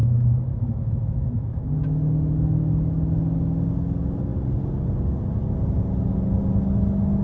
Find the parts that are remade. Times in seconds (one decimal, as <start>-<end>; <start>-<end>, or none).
0.0-1.7